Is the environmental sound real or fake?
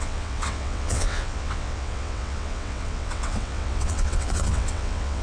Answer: fake